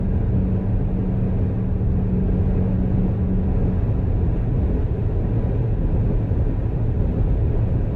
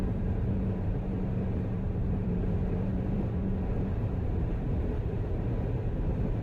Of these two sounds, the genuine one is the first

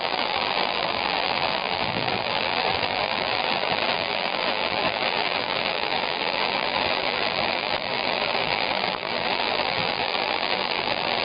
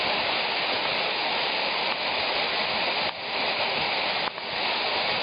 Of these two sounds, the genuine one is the second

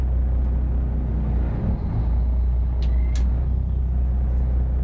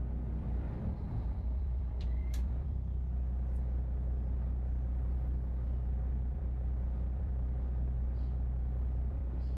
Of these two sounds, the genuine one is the first